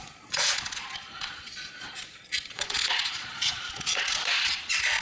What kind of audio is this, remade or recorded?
remade